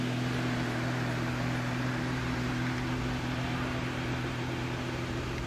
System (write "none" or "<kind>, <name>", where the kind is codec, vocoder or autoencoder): none